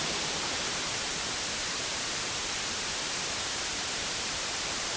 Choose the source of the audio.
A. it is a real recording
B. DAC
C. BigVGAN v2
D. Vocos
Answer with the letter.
C